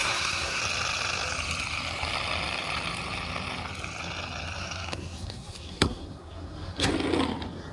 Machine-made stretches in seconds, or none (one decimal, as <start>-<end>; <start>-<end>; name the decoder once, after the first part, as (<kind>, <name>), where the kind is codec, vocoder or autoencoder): 0.0-0.6 (codec, SNAC); 4.6-6.9